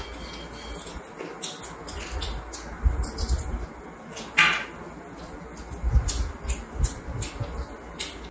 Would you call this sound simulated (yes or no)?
no